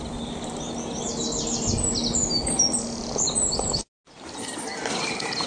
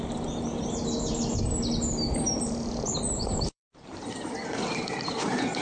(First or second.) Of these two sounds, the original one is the first